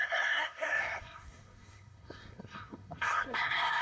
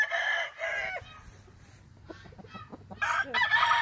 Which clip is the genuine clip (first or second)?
second